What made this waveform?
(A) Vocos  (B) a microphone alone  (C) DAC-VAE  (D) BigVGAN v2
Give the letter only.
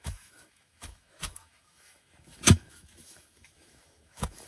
C